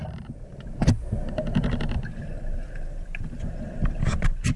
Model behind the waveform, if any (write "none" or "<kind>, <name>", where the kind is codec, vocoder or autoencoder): none